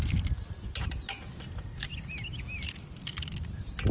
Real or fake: real